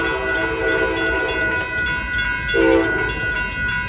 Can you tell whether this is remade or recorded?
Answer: recorded